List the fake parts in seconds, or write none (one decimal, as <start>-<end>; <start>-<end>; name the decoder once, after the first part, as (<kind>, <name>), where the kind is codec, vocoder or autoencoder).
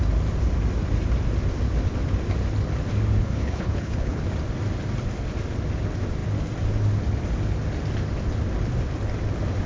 3.2-4.2 (codec, HILCodec)